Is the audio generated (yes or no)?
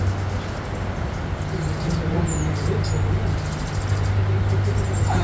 no